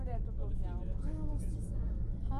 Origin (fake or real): real